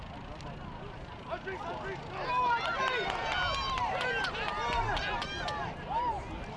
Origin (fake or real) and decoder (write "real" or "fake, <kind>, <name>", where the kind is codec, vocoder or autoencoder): real